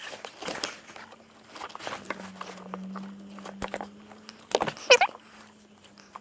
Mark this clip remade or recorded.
recorded